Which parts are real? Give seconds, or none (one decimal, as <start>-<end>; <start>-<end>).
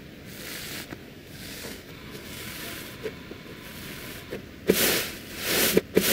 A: 0.0-1.0; 2.6-6.1